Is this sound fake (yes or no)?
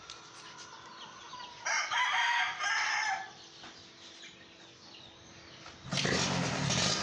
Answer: no